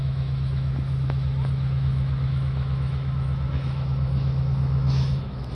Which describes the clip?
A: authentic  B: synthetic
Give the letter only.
B